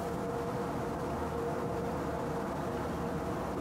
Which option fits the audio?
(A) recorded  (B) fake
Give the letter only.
A